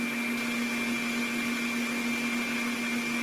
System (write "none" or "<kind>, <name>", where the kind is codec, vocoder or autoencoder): none